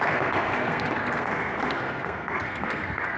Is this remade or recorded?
remade